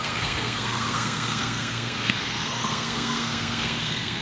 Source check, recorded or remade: remade